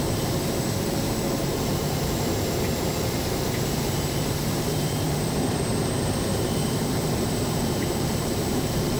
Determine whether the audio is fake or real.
fake